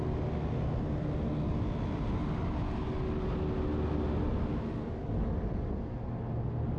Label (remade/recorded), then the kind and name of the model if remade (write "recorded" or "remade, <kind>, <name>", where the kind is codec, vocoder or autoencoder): recorded